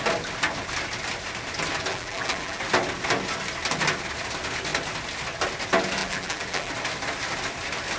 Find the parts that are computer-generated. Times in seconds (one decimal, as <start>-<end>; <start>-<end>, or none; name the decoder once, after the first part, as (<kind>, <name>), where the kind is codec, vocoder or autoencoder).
1.9-2.6 (vocoder, BigVGAN v2); 6.0-6.7